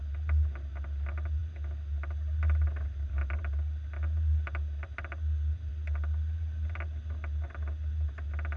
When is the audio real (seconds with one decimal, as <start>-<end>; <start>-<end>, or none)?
0.0-8.6